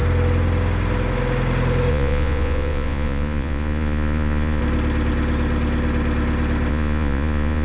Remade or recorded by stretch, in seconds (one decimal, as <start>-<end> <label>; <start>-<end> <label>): 0.0-1.9 recorded; 1.9-4.6 remade; 4.6-6.7 recorded; 6.7-7.6 remade